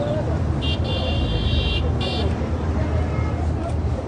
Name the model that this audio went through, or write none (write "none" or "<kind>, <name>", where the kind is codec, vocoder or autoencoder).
none